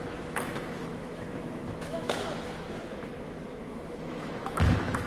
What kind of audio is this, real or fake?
fake